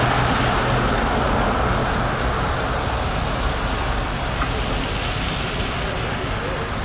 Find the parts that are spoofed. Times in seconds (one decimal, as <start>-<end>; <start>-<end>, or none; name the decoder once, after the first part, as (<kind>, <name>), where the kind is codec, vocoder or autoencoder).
none